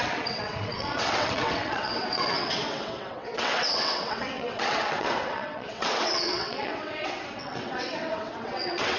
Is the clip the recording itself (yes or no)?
no